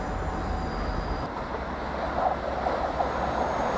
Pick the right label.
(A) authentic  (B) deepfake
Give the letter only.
A